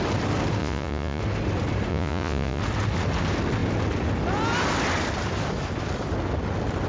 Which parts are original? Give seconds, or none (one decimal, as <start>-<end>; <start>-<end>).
0.0-0.6; 1.2-1.9; 2.6-6.9